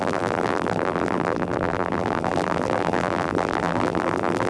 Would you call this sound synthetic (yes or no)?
yes